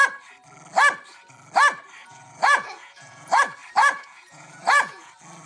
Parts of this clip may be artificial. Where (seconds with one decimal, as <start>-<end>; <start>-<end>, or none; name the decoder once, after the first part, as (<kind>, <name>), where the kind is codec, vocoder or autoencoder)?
2.0-3.4 (vocoder, Vocos); 3.8-5.1